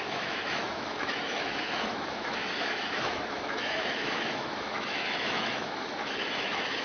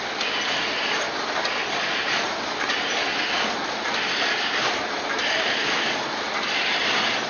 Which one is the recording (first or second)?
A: second